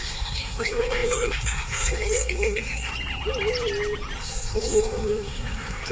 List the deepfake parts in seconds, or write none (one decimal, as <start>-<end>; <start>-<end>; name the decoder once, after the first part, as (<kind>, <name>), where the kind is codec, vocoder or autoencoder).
0.0-2.9 (codec, SNAC); 4.2-5.9